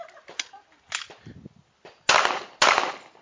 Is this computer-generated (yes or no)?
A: no